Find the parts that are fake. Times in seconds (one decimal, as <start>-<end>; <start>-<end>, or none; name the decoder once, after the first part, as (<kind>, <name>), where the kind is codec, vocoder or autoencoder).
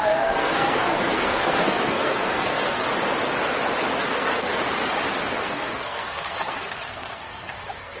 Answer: 0.0-2.9 (codec, SNAC); 4.0-4.5; 5.4-8.0